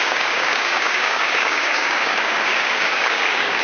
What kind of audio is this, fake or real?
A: fake